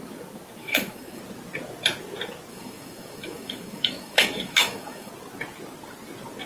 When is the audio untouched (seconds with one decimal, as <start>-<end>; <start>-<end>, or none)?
0.0-0.6; 1.2-2.5; 5.1-6.5